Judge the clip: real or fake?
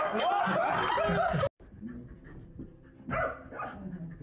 real